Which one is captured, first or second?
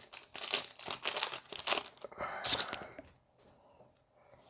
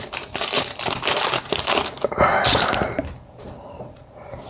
first